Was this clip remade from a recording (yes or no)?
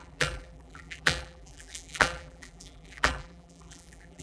yes